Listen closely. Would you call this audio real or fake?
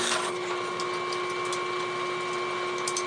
real